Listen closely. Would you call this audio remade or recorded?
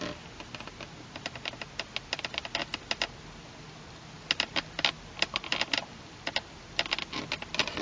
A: recorded